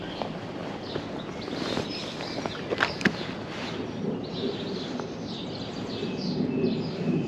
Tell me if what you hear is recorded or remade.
recorded